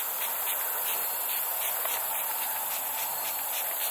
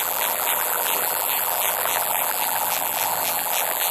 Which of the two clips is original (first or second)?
first